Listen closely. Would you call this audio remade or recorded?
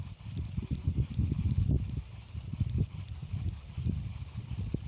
remade